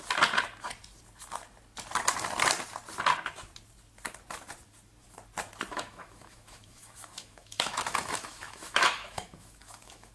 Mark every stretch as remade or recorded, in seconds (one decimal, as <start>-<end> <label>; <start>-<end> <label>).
0.0-5.7 recorded; 5.7-10.1 remade

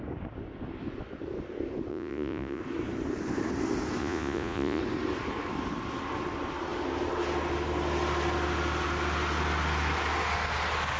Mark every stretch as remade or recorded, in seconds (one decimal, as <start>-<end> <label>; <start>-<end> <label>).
0.0-1.9 recorded; 1.9-2.6 remade; 2.6-4.0 recorded; 4.0-4.8 remade; 4.8-11.0 recorded

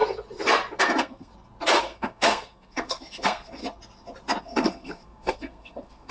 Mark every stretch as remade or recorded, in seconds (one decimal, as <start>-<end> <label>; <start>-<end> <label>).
0.0-0.8 recorded; 0.8-1.3 remade; 1.3-1.8 recorded; 1.8-3.6 remade; 3.6-4.4 recorded; 4.4-6.1 remade

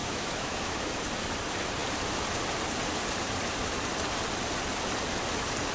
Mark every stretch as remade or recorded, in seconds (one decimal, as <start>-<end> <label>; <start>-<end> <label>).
0.0-0.9 remade; 0.9-5.7 recorded

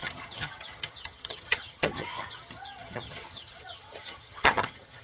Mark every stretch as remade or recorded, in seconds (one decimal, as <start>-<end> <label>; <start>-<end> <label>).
0.0-5.0 remade

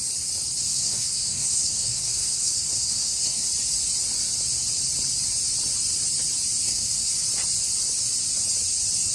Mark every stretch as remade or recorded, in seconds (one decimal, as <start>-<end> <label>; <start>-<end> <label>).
0.0-0.7 recorded; 0.7-3.5 remade; 3.5-6.6 recorded; 6.6-7.1 remade; 7.1-9.1 recorded